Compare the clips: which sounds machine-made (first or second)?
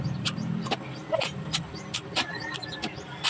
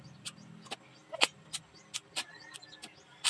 first